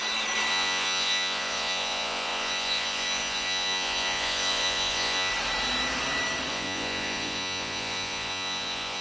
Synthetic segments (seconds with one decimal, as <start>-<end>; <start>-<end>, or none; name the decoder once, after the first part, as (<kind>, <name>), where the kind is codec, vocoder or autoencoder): 0.5-5.3 (vocoder, Vocos); 6.5-9.0

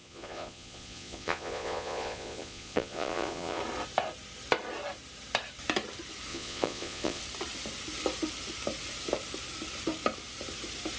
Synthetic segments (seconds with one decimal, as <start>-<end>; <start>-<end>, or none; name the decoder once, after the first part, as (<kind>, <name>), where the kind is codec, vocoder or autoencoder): 0.0-3.6 (vocoder, Vocos); 6.3-7.2